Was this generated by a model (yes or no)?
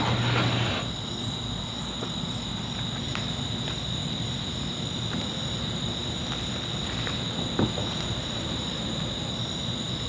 no